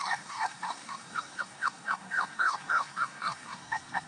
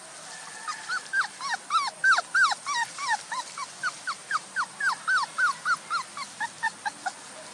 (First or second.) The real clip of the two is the second